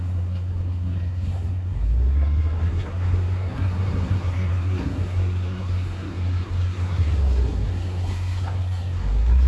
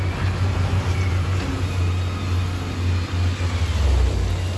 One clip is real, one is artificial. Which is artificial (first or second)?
first